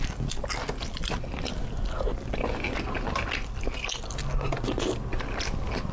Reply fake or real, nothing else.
real